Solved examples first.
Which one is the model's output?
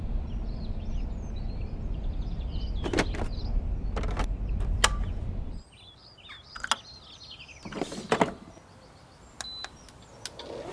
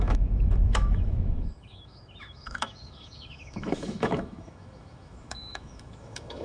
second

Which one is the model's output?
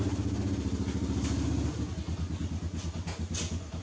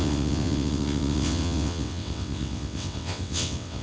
second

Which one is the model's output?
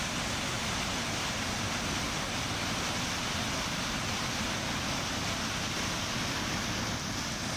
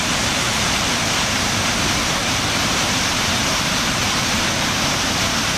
second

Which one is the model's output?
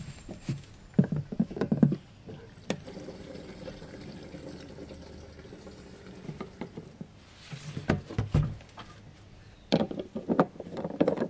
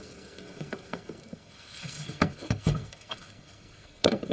second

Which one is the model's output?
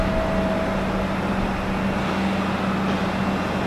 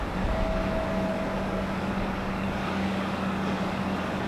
second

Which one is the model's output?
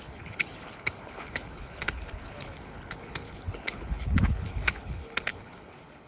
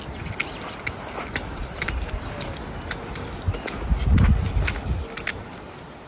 first